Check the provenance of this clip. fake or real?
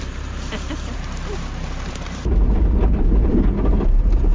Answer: fake